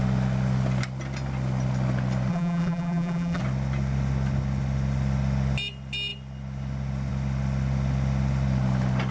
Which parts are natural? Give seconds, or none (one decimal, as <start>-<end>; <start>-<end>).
0.0-2.3; 3.4-9.1